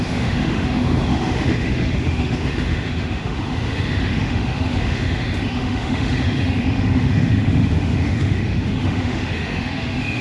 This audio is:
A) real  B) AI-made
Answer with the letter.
B